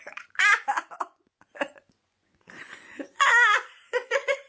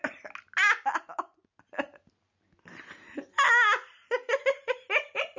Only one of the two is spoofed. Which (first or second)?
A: first